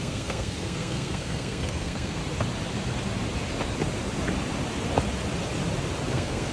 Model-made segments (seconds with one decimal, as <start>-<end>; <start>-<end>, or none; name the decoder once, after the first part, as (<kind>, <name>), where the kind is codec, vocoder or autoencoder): 0.0-2.2 (codec, SNAC); 6.1-6.5